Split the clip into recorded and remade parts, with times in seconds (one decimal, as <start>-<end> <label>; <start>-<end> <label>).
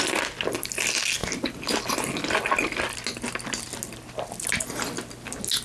0.0-5.6 recorded